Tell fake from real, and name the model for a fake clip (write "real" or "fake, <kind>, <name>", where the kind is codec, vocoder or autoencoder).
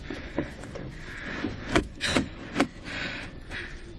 fake, vocoder, Vocos